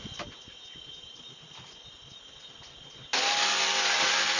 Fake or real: real